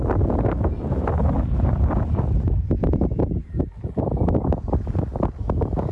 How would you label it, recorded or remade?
recorded